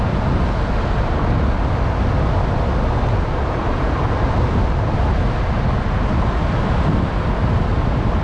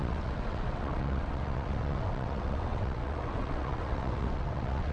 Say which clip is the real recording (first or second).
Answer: first